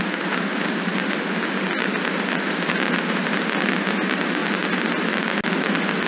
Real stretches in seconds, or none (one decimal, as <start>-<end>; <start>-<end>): 0.0-6.1